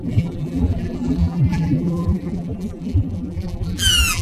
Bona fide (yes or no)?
no